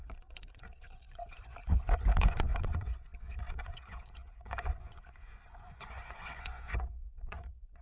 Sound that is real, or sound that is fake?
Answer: fake